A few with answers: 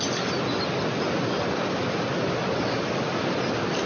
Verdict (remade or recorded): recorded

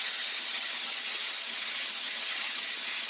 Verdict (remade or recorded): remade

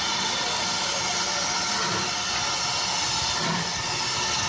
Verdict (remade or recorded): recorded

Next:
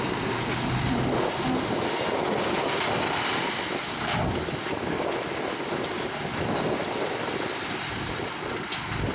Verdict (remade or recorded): recorded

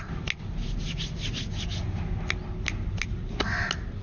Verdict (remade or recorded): recorded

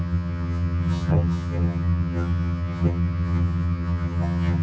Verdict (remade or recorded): remade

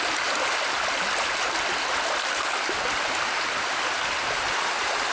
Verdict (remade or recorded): recorded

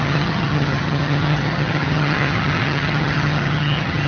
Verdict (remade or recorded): remade